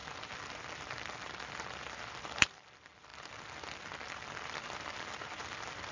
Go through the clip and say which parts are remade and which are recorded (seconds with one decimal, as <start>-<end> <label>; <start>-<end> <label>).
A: 0.0-3.1 remade; 3.1-5.2 recorded; 5.2-5.9 remade